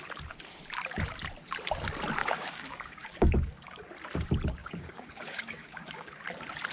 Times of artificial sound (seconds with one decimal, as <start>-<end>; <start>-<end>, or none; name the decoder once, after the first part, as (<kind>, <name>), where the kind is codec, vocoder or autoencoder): 2.2-3.8 (codec, DAC); 4.6-6.1